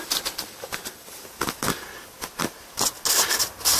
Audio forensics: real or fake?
real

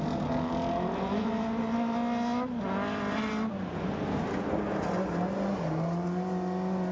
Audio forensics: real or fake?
real